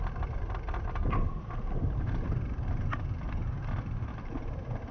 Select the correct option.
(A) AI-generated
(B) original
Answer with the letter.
B